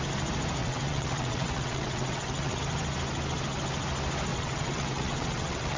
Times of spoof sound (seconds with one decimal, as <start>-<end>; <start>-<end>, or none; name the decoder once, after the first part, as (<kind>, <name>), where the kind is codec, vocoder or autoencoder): 0.6-2.6 (vocoder, WaveNeXt); 4.3-5.8

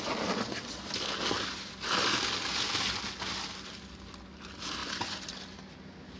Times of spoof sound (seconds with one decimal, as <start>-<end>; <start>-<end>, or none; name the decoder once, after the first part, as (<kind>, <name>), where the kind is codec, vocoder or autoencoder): none

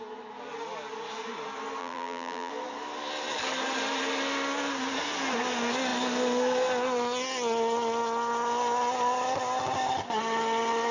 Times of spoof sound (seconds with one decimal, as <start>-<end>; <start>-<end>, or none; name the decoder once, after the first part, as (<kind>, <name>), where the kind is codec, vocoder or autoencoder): 1.8-2.5 (vocoder, BigVGAN v2)

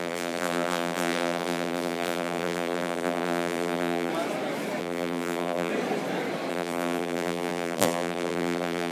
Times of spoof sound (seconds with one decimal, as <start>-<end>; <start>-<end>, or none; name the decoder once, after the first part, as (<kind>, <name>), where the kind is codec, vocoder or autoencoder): 0.0-4.1 (vocoder, BigVGAN v2); 4.8-5.7; 6.5-8.9